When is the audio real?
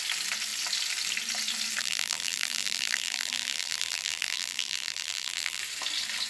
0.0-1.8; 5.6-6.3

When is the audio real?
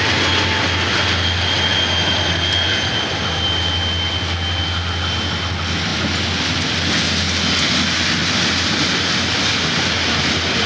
0.0-10.7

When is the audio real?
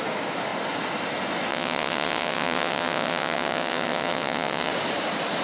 0.0-1.5; 4.7-5.4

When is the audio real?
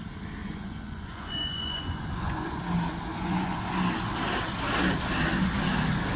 0.0-0.4; 2.6-3.1; 3.6-6.2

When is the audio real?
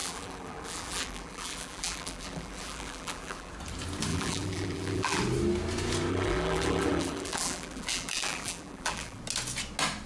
3.5-4.1; 5.2-6.1; 9.2-10.1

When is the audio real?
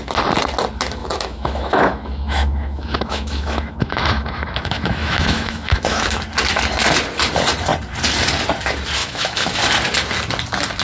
0.0-1.0; 6.2-9.0; 9.6-10.8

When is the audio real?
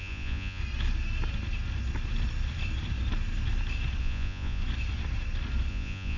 0.6-4.0; 4.6-5.7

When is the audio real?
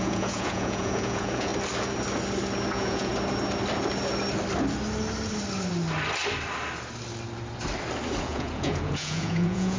1.5-2.7; 3.1-8.2